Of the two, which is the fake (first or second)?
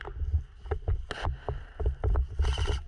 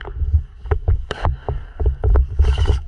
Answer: second